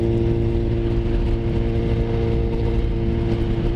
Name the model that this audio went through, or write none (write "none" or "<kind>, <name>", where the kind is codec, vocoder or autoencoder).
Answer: none